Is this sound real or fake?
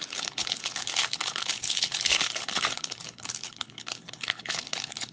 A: fake